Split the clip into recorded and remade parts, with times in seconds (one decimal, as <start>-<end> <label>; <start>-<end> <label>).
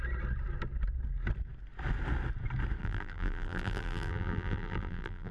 0.0-2.8 recorded; 2.8-5.3 remade